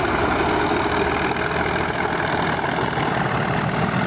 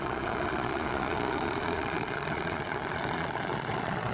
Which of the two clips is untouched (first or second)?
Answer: first